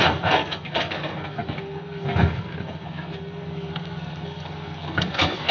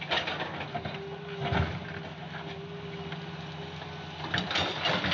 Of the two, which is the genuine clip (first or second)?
second